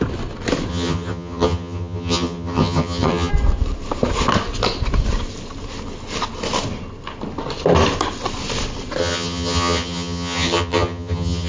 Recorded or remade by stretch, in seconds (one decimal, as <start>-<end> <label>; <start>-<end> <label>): 0.0-0.7 recorded; 0.7-3.3 remade; 3.3-9.0 recorded; 9.0-11.5 remade